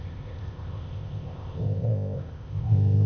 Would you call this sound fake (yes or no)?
yes